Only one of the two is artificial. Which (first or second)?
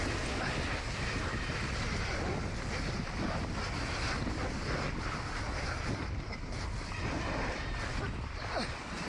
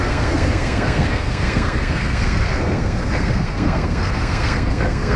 second